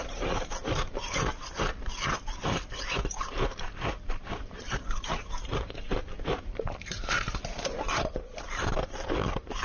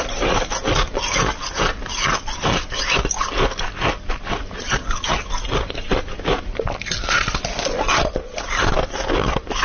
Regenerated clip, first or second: first